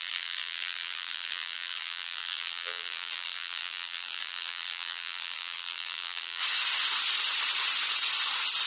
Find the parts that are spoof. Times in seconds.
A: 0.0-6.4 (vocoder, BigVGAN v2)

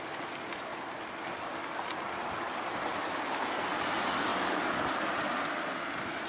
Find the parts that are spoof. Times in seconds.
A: none

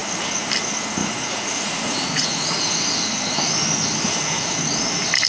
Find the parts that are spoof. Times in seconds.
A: 1.0-2.7 (vocoder, Vocos)

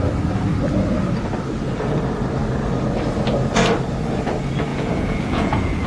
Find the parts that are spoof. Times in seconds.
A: 4.7-5.9 (vocoder, Vocos)